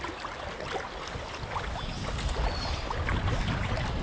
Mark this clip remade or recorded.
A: recorded